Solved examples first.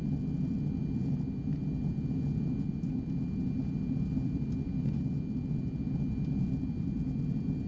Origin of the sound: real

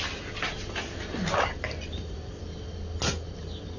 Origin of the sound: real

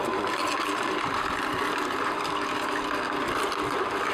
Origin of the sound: fake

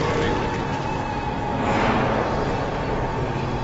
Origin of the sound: real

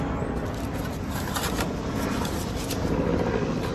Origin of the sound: real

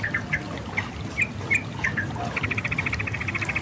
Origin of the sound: real